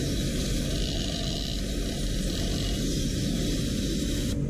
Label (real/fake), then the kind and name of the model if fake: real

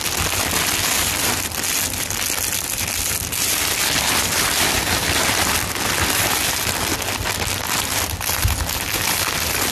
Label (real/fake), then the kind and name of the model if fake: real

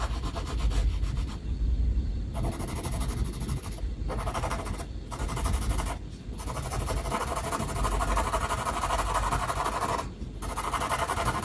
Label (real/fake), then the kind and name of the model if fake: real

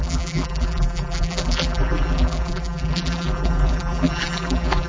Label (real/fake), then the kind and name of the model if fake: fake, vocoder, BigVGAN v2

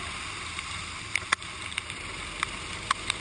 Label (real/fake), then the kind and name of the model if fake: real